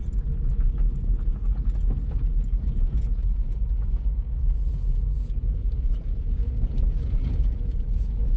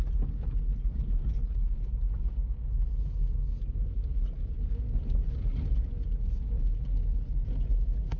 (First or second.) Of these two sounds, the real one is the second